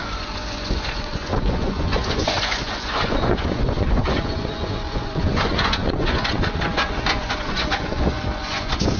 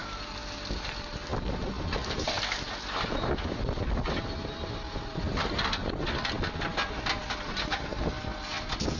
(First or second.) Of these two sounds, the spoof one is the first